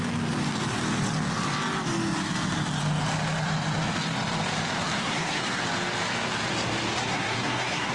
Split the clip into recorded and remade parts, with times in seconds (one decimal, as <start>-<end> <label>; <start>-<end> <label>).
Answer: 0.0-5.0 recorded; 5.0-5.6 remade; 5.6-7.0 recorded; 7.0-7.9 remade